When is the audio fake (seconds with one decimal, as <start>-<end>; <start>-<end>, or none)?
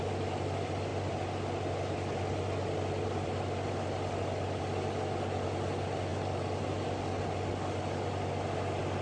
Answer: none